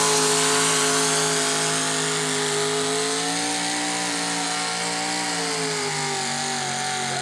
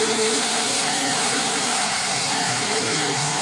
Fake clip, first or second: second